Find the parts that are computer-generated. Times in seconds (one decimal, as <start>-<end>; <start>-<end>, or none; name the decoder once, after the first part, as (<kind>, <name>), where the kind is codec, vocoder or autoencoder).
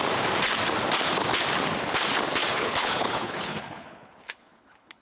2.5-5.0 (codec, HILCodec)